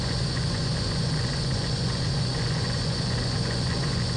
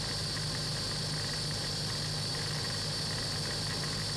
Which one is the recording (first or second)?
second